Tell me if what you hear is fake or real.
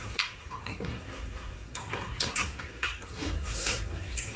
fake